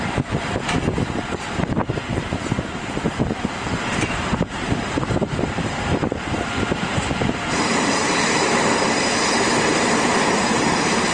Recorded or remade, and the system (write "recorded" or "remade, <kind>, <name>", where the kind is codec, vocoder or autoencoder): remade, vocoder, BigVGAN v2